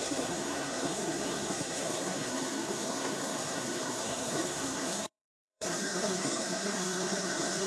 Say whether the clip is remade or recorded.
remade